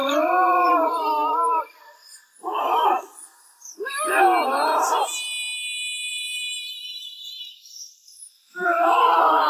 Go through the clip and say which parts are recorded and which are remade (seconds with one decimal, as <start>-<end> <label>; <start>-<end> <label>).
0.0-4.2 remade; 4.2-6.0 recorded; 6.0-9.5 remade

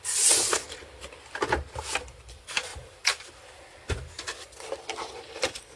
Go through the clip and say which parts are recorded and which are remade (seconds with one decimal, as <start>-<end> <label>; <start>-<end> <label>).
0.0-5.8 remade

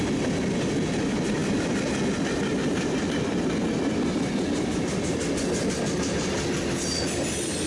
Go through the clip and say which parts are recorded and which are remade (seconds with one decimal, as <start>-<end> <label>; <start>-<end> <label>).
0.0-1.4 recorded; 1.4-5.7 remade; 5.7-7.7 recorded

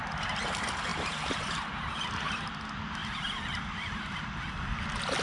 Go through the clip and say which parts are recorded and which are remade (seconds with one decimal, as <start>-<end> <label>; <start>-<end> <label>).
0.0-0.9 recorded; 0.9-2.4 remade; 2.4-3.0 recorded; 3.0-3.6 remade; 3.6-5.2 recorded

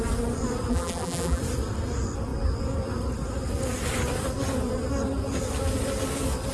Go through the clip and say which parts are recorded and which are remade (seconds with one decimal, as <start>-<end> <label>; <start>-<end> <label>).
0.0-0.7 recorded; 0.7-1.4 remade; 1.4-6.5 recorded

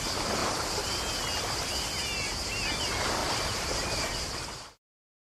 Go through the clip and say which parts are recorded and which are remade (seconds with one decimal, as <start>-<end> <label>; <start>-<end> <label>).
0.0-3.2 recorded; 3.2-4.3 remade; 4.3-5.2 recorded